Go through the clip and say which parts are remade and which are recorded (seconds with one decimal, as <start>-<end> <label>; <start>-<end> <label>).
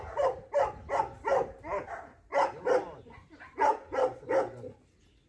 0.0-5.3 recorded